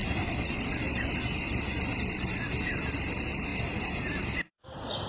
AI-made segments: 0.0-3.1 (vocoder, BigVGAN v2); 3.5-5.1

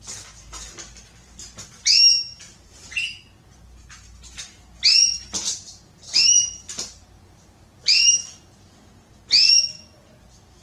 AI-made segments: 1.4-3.0 (vocoder, BigVGAN v2); 5.0-8.8

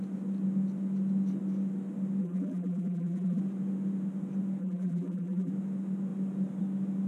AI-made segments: 2.2-3.4 (vocoder, BigVGAN v2); 4.6-5.5

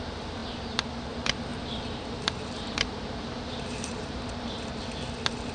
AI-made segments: 1.5-4.8 (vocoder, BigVGAN v2)

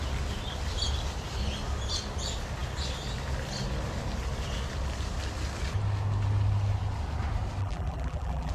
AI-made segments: 7.6-8.5 (vocoder, BigVGAN v2)

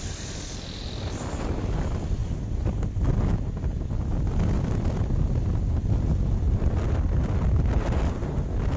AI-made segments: 2.2-2.8 (vocoder, BigVGAN v2)

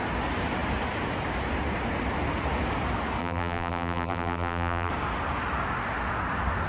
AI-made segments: 3.2-4.9 (vocoder, BigVGAN v2)

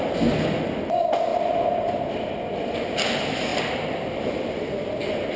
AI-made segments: 3.5-4.2 (vocoder, BigVGAN v2)